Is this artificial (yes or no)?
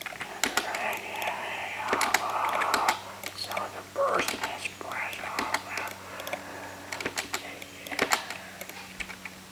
no